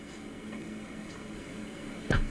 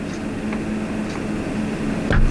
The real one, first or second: second